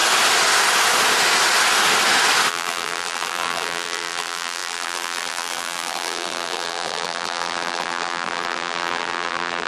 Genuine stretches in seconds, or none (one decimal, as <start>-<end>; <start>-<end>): 0.0-2.5